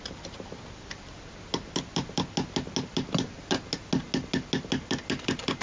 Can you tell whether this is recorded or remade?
recorded